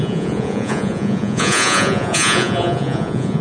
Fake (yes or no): yes